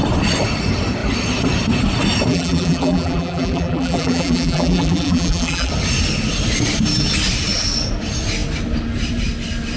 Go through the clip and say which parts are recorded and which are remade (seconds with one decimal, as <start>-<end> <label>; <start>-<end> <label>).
0.0-2.3 recorded; 2.3-5.7 remade; 5.7-9.8 recorded